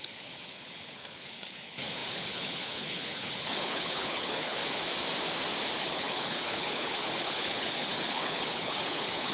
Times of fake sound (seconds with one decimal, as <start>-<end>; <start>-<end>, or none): 0.0-4.6; 5.8-9.3